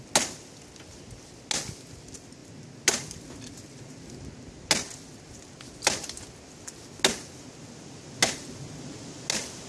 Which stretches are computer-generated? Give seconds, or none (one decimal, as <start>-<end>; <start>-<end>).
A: none